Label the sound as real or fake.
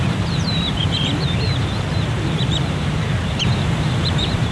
fake